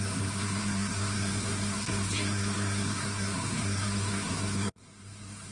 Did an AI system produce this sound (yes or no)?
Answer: yes